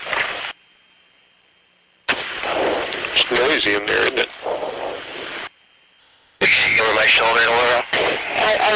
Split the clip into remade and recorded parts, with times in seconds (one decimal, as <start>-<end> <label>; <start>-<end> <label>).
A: 0.0-6.0 recorded; 6.0-6.8 remade; 6.8-8.8 recorded